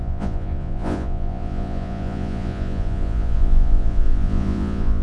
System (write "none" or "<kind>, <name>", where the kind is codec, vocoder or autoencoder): vocoder, Vocos